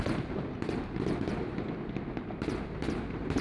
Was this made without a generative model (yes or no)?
yes